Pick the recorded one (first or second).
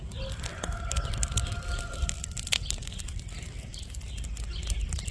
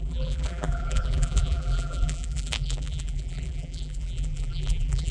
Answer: first